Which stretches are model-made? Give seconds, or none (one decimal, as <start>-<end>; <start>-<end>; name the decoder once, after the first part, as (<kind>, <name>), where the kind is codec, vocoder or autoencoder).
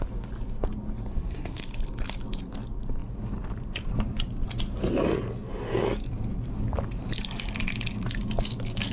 1.1-1.6 (codec, SNAC)